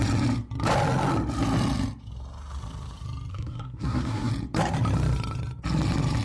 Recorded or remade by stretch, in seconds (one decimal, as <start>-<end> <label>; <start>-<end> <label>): 0.0-3.3 recorded; 3.3-4.3 remade; 4.3-6.2 recorded